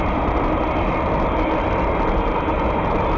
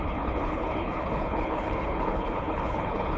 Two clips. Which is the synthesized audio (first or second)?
second